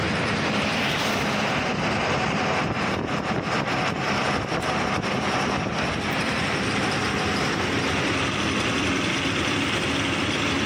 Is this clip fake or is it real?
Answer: real